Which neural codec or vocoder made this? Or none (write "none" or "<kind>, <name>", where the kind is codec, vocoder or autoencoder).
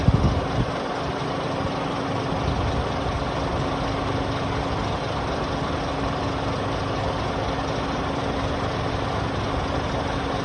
none